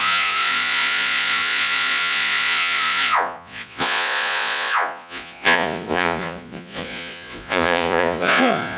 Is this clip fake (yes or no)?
yes